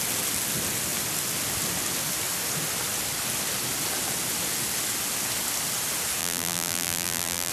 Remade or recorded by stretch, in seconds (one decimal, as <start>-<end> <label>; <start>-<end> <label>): 0.0-6.2 recorded; 6.2-7.5 remade